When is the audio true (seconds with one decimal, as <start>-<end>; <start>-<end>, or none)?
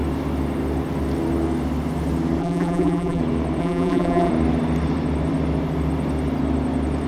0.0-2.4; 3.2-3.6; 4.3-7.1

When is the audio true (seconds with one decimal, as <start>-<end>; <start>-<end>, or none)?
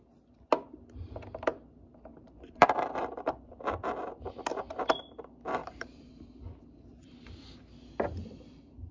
0.0-2.1; 2.7-5.6; 6.1-8.9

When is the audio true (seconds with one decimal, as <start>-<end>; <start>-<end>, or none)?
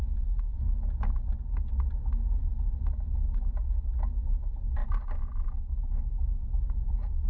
0.0-2.4; 3.4-7.3